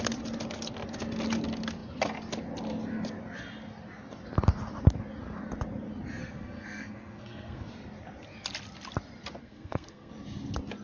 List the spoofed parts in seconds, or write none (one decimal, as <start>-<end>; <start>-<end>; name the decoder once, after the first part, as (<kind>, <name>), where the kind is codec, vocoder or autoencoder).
6.2-7.7 (codec, SNAC); 9.4-10.1